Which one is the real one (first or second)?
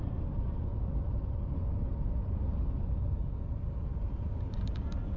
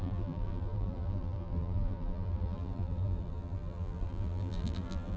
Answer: first